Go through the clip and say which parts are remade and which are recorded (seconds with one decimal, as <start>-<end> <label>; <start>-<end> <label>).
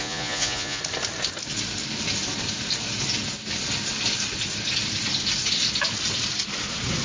0.0-0.8 remade; 0.8-7.0 recorded